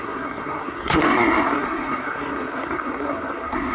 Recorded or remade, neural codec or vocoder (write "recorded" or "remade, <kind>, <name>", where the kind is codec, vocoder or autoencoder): remade, codec, SNAC